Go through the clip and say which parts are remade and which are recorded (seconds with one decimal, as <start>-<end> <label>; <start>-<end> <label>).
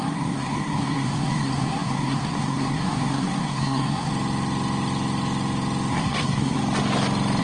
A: 0.0-4.1 remade; 4.1-5.9 recorded; 5.9-6.6 remade; 6.6-7.4 recorded